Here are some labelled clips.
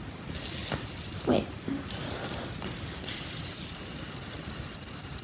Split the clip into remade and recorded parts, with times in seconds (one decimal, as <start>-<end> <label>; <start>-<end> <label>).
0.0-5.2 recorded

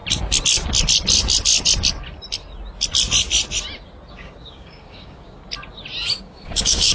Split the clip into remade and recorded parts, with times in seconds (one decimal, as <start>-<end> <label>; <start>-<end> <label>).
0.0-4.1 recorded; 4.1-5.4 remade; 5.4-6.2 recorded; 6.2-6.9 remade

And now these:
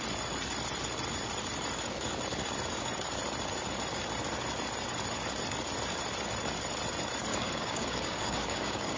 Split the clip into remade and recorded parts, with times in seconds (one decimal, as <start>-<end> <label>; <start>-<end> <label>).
0.0-7.3 recorded; 7.3-9.0 remade

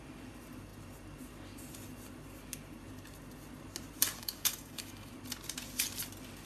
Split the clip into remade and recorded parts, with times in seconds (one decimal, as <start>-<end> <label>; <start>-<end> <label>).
0.0-4.2 recorded; 4.2-5.1 remade; 5.1-6.5 recorded